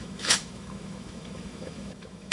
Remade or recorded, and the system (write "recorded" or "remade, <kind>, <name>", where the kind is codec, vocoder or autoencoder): remade, autoencoder, DAC-VAE